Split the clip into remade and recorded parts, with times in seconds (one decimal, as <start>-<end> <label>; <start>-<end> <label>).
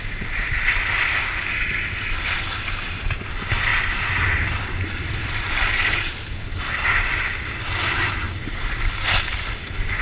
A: 0.0-10.0 recorded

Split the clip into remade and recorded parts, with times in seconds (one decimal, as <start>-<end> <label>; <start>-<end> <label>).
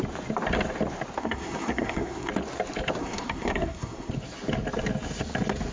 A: 0.0-1.2 recorded; 1.2-2.3 remade; 2.3-3.0 recorded; 3.0-4.1 remade; 4.1-5.7 recorded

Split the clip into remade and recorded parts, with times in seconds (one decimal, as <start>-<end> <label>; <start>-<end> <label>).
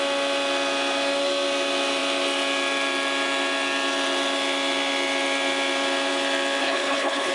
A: 0.0-6.6 recorded; 6.6-7.3 remade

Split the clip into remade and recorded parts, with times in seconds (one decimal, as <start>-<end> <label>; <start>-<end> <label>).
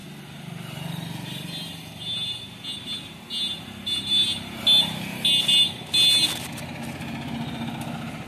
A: 0.0-8.3 recorded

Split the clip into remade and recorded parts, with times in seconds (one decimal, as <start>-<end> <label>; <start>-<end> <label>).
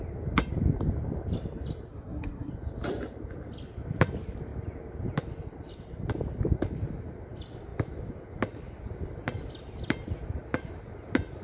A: 0.0-1.9 recorded; 1.9-2.5 remade; 2.5-11.4 recorded